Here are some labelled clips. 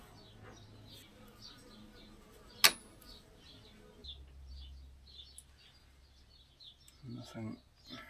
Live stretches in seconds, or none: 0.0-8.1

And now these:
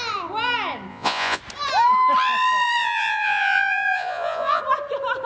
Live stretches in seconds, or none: 0.0-0.9; 1.4-2.8; 4.6-5.3

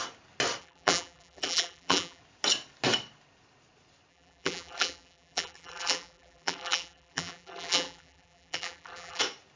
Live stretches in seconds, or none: 0.0-0.6; 2.2-4.1; 9.2-9.6

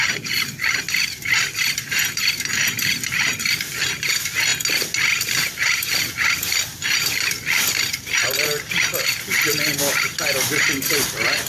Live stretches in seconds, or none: 0.0-1.0; 2.3-11.5

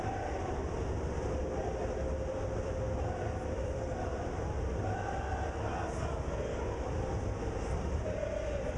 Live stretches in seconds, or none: 0.0-1.4; 4.7-8.8

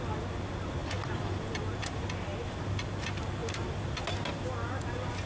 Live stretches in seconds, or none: 0.0-5.3

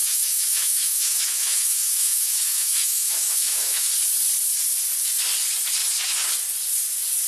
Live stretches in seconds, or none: 3.9-7.3

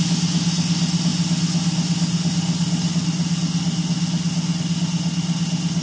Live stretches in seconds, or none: 0.0-5.8